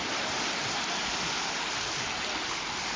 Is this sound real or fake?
real